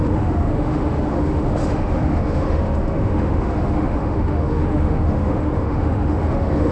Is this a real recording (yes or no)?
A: no